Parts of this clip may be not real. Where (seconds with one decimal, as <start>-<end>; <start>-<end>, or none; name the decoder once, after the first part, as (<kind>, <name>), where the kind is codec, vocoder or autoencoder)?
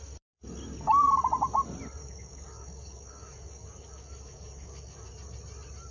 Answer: 2.0-5.1 (codec, DAC)